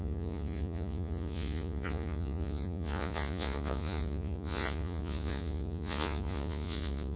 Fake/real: fake